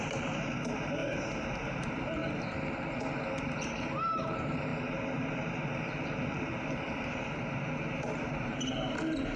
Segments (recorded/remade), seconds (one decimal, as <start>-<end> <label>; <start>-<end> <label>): 0.0-1.0 remade; 1.0-1.5 recorded; 1.5-2.2 remade; 2.2-3.1 recorded; 3.1-9.4 remade